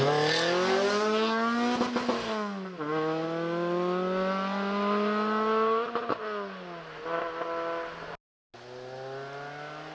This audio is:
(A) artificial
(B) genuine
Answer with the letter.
B